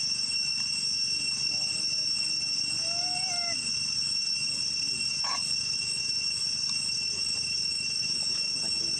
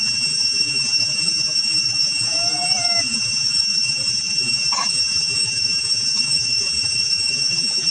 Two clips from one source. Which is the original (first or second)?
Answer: first